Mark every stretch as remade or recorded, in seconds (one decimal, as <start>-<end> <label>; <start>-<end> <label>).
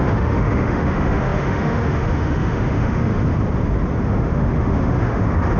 0.0-3.1 remade; 3.1-4.0 recorded; 4.0-5.6 remade